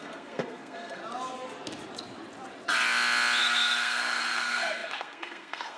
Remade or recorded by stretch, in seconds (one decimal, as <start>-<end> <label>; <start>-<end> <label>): 0.0-1.0 remade; 1.0-3.4 recorded; 3.4-5.8 remade